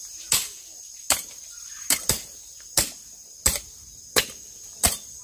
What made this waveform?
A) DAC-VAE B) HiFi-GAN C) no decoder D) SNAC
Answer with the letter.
C